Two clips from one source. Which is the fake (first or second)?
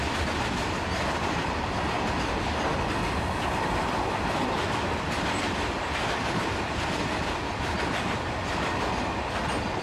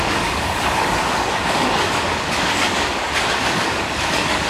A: second